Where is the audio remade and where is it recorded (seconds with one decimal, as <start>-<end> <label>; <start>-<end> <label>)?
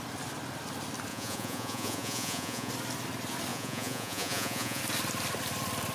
0.0-1.1 recorded; 1.1-2.7 remade; 2.7-3.5 recorded; 3.5-4.8 remade; 4.8-5.9 recorded